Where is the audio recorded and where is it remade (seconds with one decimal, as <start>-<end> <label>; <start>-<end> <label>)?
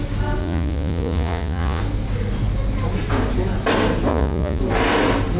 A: 0.0-0.4 recorded; 0.4-1.8 remade; 1.8-4.1 recorded; 4.1-4.6 remade; 4.6-5.4 recorded